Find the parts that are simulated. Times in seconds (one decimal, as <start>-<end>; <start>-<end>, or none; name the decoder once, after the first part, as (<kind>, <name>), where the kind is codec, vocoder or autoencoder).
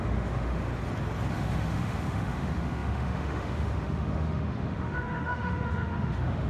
0.0-0.7 (autoencoder, DAC-VAE); 1.3-6.5